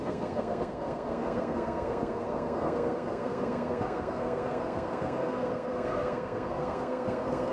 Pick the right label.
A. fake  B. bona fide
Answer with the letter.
A